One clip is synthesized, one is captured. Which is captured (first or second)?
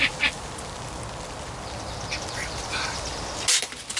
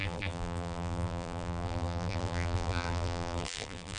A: first